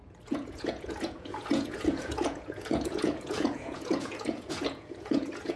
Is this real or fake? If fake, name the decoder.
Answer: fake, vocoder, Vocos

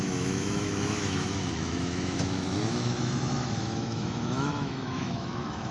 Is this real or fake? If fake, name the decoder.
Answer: fake, autoencoder, DAC-VAE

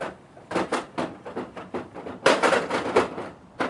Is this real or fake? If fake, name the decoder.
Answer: fake, vocoder, BigVGAN v2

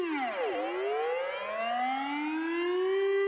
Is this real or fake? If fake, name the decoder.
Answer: real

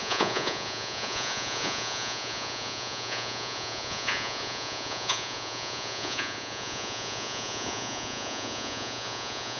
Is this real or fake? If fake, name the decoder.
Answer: fake, vocoder, Vocos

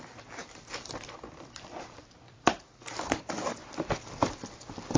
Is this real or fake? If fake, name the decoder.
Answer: fake, vocoder, BigVGAN v2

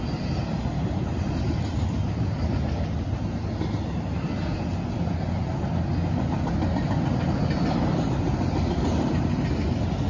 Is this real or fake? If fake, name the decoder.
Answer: real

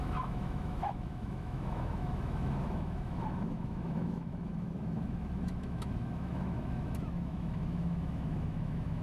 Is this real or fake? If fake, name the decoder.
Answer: fake, autoencoder, DAC-VAE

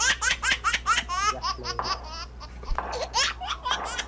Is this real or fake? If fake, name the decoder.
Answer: real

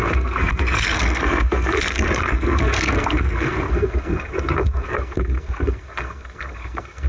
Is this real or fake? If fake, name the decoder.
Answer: fake, codec, SNAC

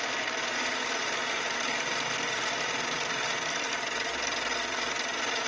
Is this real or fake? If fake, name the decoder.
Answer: real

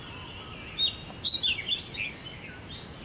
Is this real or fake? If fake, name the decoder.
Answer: real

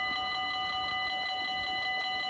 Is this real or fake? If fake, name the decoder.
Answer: real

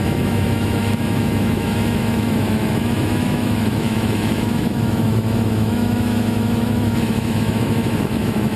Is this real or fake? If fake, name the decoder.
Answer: fake, autoencoder, DAC-VAE